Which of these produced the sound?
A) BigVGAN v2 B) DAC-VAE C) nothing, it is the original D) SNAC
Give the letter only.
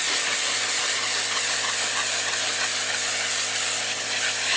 C